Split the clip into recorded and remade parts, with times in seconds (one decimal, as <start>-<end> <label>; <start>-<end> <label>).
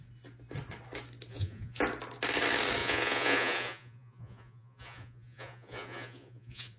0.0-1.3 recorded; 1.3-1.8 remade; 1.8-2.8 recorded; 2.8-6.8 remade